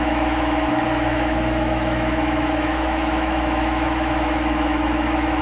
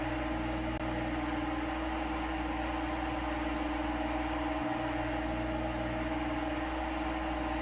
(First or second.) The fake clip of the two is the first